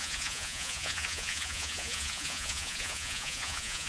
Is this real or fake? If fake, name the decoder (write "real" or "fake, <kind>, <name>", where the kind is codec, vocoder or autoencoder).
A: fake, vocoder, Vocos